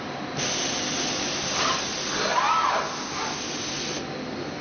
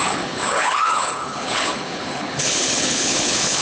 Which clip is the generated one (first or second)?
second